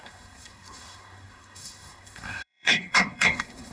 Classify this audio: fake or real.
fake